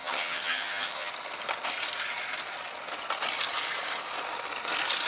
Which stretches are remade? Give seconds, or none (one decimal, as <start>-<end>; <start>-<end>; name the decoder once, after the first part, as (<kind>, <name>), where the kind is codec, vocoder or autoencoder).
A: 0.0-1.1 (vocoder, HiFi-GAN)